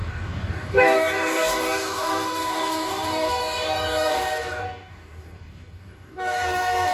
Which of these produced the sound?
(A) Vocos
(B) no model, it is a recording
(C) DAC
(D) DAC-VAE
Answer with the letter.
C